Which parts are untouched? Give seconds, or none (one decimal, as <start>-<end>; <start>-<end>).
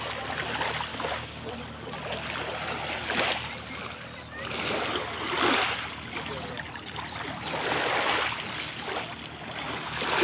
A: 0.0-0.9; 1.5-10.2